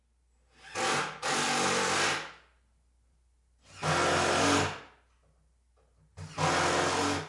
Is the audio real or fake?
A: real